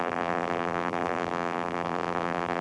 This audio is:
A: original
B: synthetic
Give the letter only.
B